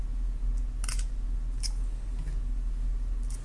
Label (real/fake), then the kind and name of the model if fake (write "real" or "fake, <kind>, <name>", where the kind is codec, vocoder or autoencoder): real